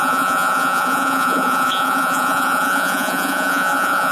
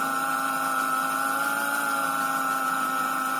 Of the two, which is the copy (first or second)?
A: first